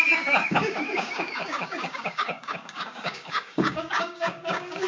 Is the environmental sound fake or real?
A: fake